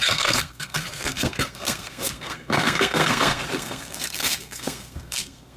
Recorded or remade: remade